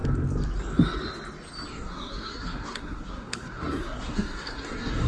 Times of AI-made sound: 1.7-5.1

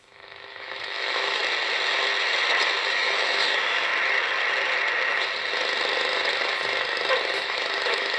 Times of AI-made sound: 0.0-1.4; 2.9-3.9; 7.3-8.2